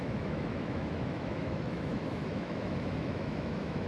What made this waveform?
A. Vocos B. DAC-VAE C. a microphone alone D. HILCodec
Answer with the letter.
B